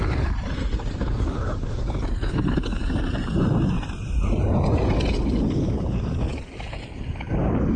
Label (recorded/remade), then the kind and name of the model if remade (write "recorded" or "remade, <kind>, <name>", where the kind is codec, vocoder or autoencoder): recorded